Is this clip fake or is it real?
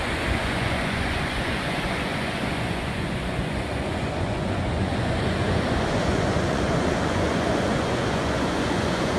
fake